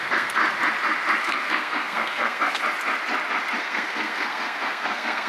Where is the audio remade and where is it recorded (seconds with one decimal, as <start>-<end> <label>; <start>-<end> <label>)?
0.0-0.4 remade; 0.4-1.2 recorded; 1.2-2.6 remade; 2.6-3.6 recorded; 3.6-5.3 remade